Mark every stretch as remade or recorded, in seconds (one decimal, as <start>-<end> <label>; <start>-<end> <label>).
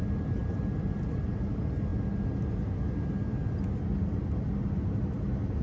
0.0-5.6 recorded